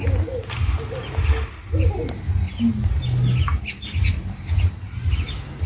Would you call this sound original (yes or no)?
yes